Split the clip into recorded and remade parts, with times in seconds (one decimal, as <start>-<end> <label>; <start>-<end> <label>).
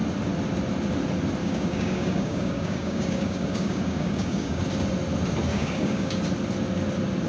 0.0-1.4 recorded; 1.4-4.6 remade; 4.6-5.5 recorded; 5.5-6.2 remade; 6.2-7.3 recorded